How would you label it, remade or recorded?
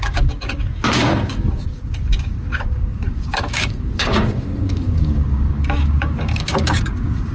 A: remade